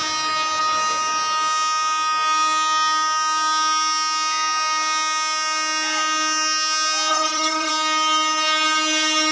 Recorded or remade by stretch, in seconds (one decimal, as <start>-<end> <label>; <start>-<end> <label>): 0.0-7.1 recorded; 7.1-7.7 remade; 7.7-9.3 recorded